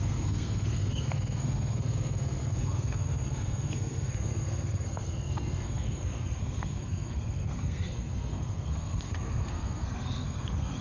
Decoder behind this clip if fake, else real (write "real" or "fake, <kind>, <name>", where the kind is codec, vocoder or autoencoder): fake, codec, SNAC